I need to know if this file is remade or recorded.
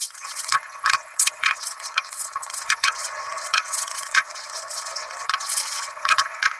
remade